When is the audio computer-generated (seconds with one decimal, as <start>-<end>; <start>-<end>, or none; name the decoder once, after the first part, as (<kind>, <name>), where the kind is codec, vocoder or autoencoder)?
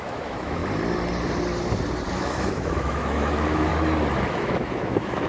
0.0-0.6 (autoencoder, DAC-VAE); 2.1-3.7; 4.3-5.3